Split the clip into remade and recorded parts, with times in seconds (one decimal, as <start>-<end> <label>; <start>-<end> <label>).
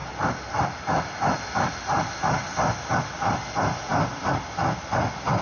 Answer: 0.0-5.4 recorded